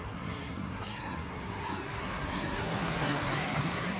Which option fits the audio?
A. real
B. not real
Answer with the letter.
B